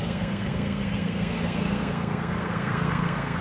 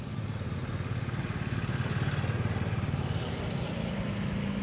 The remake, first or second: first